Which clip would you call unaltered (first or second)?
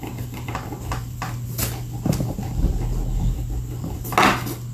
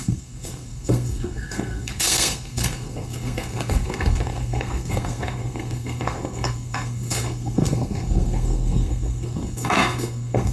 first